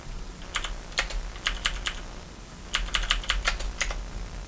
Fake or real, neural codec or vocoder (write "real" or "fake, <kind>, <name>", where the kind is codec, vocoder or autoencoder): real